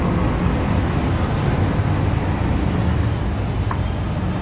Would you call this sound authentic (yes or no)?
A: yes